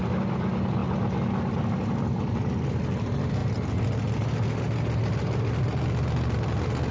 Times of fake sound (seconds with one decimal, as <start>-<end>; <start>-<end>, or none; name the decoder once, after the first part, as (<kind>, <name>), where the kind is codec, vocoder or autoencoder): none